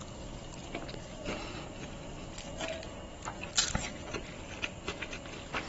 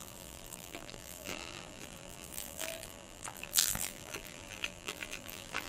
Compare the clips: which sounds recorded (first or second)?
first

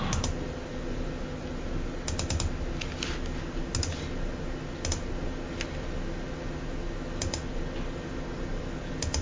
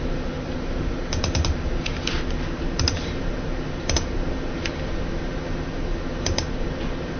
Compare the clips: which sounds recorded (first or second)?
first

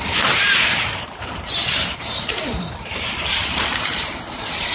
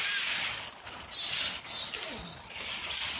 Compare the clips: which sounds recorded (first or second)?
second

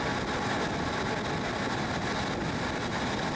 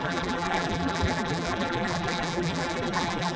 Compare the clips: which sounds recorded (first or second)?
first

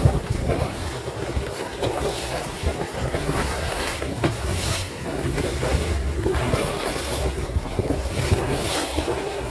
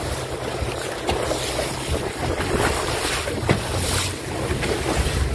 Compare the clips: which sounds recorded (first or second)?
second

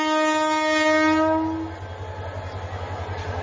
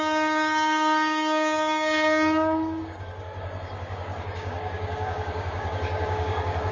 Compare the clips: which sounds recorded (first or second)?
first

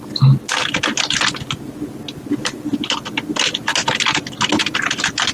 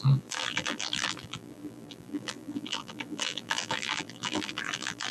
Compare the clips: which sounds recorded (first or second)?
first